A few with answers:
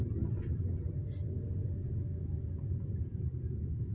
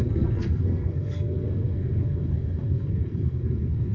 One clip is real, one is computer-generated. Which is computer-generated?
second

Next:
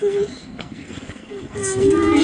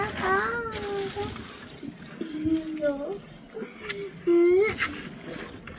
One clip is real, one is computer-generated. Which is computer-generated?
first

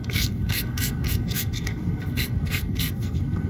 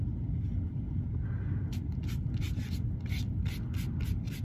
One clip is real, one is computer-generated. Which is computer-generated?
first